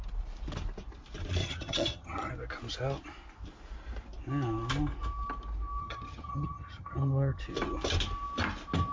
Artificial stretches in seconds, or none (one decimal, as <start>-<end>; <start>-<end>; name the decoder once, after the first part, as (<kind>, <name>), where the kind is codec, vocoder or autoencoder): 1.4-2.3 (vocoder, HiFi-GAN); 5.8-7.4